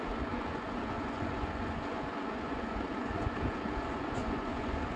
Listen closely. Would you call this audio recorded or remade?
remade